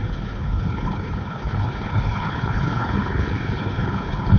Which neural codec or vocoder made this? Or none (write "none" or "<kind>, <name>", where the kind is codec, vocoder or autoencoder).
codec, HILCodec